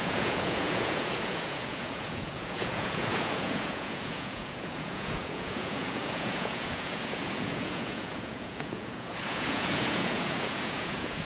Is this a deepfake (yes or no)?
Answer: yes